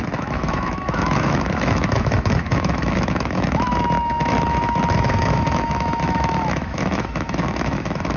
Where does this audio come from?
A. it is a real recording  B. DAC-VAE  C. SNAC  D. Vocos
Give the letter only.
B